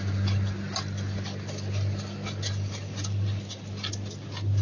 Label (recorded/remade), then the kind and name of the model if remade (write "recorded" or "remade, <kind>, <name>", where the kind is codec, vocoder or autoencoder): recorded